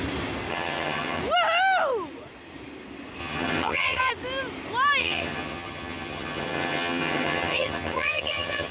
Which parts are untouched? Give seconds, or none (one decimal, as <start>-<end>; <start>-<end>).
0.0-0.5; 1.2-3.2; 4.1-5.0